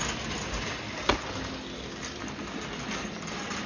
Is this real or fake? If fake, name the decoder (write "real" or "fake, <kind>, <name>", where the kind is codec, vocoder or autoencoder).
real